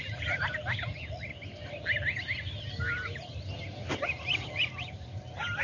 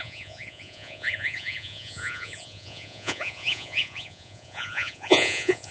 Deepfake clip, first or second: second